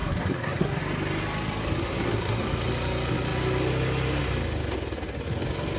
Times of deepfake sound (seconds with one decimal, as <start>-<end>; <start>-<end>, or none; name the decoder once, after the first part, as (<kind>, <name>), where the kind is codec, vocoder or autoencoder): 0.0-0.8 (codec, SNAC); 1.8-2.4